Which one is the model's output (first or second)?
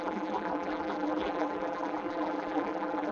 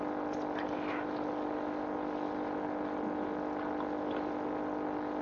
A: first